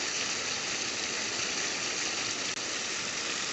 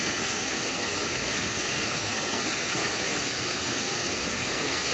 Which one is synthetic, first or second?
second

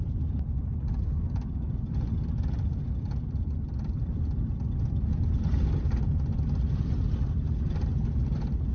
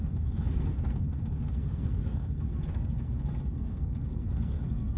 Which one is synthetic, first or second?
second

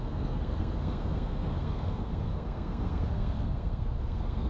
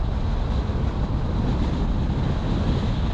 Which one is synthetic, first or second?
first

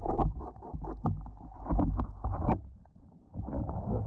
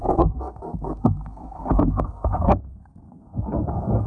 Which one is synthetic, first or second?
second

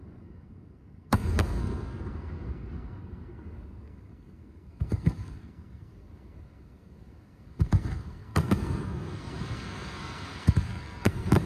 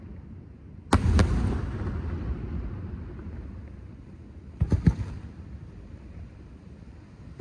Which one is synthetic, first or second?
first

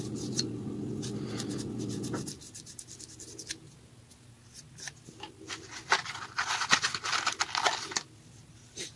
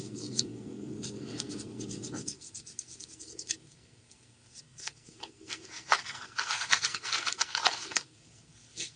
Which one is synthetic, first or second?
second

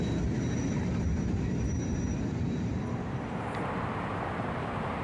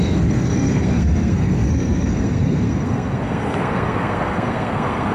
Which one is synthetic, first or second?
second